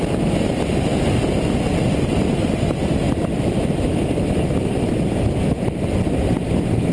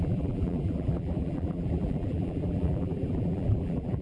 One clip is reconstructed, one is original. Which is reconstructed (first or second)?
second